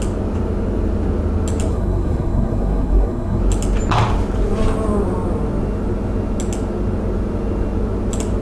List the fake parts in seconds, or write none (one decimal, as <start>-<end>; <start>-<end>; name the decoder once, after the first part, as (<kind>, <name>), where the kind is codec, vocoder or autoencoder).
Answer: 1.7-3.4 (codec, SNAC)